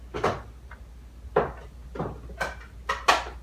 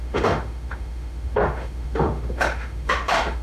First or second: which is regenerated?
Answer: second